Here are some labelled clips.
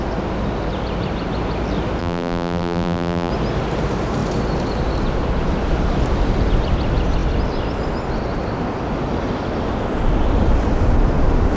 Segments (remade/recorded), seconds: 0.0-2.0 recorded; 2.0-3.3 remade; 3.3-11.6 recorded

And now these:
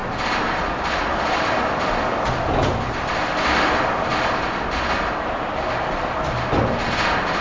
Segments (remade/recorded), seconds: 0.0-0.6 remade; 0.6-7.4 recorded

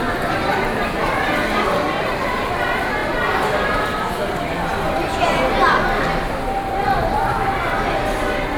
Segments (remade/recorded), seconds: 0.0-8.6 recorded

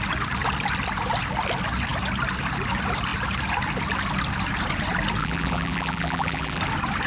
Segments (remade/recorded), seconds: 0.0-5.2 recorded; 5.2-6.6 remade; 6.6-7.1 recorded

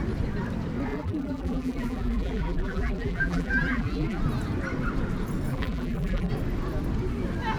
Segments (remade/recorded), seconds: 0.0-0.9 recorded; 0.9-4.2 remade; 4.2-5.5 recorded; 5.5-6.3 remade; 6.3-7.6 recorded

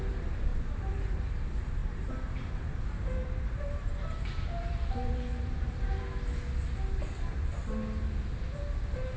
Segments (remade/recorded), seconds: 0.0-0.5 recorded; 0.5-1.2 remade; 1.2-1.8 recorded; 1.8-2.7 remade; 2.7-3.2 recorded; 3.2-6.0 remade; 6.0-9.2 recorded

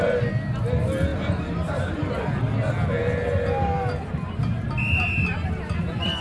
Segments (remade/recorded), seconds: 0.0-1.1 recorded; 1.1-2.0 remade; 2.0-6.2 recorded

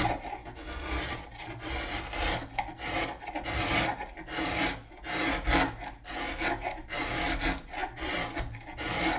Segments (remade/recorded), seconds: 0.0-9.2 recorded